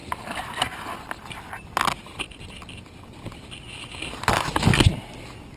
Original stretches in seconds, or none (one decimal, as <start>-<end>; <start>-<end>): 0.0-5.6